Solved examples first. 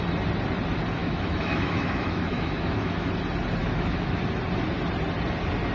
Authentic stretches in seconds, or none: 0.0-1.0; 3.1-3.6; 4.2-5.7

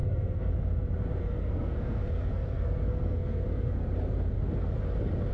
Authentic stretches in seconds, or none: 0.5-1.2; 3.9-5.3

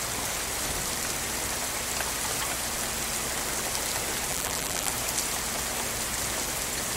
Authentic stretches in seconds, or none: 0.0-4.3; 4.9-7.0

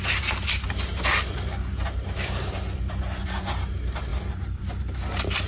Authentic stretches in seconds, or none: 0.0-5.5